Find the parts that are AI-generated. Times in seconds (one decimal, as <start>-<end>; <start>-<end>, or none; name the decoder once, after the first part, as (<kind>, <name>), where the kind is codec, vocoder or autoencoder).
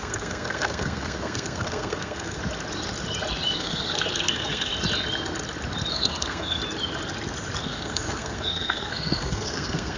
0.0-2.4 (codec, SNAC); 3.6-4.7; 5.9-6.6; 7.6-10.0